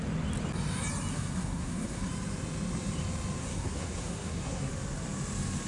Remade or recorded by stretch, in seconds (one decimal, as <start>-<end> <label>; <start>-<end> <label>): 0.0-1.1 recorded; 1.1-2.1 remade; 2.1-3.4 recorded; 3.4-4.7 remade; 4.7-5.7 recorded